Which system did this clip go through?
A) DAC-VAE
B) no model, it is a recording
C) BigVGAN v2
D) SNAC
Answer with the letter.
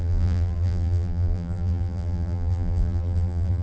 C